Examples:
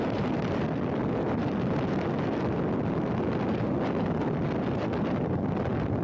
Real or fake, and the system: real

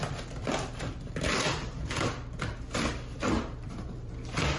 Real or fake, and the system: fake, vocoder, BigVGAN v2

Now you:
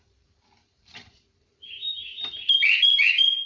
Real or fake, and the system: fake, vocoder, BigVGAN v2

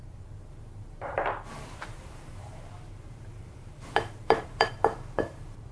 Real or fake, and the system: fake, vocoder, BigVGAN v2